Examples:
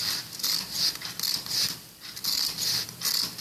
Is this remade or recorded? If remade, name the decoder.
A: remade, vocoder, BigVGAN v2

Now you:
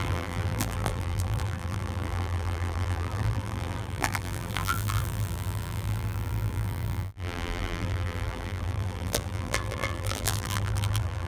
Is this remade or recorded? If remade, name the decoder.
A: remade, vocoder, BigVGAN v2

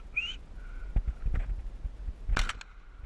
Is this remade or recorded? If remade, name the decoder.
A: recorded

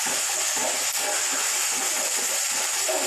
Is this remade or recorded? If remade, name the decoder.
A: recorded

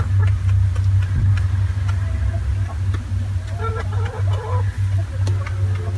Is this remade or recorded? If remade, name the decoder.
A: recorded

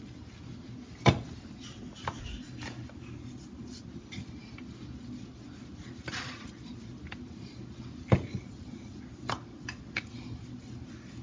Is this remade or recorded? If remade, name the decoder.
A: recorded